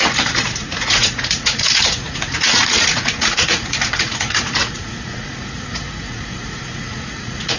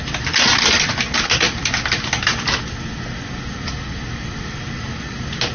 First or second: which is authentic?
second